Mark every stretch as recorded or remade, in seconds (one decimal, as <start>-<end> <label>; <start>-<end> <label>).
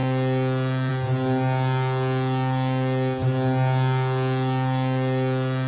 0.0-5.7 recorded